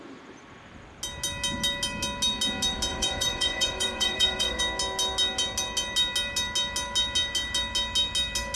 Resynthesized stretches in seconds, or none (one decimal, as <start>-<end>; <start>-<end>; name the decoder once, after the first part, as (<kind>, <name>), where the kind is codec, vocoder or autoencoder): 2.9-4.6 (vocoder, Vocos)